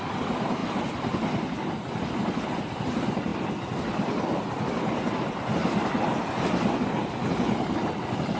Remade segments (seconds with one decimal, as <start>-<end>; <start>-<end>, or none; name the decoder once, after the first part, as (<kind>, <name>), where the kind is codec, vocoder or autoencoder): none